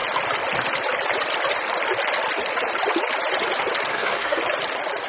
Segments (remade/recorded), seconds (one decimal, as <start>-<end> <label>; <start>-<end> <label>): 0.0-3.9 recorded; 3.9-4.4 remade; 4.4-5.1 recorded